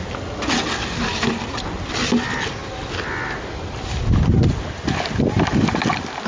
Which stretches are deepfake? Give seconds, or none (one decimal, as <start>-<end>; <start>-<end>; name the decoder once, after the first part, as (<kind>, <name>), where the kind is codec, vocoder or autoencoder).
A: none